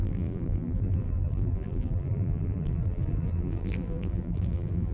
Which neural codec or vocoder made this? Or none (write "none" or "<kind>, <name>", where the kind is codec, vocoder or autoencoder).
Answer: vocoder, BigVGAN v2